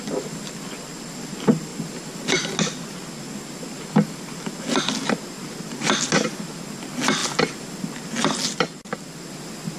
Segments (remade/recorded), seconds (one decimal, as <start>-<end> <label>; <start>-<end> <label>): 0.0-9.8 recorded